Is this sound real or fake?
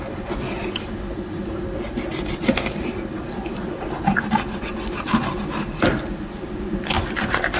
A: real